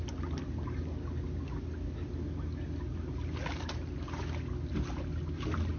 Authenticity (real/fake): real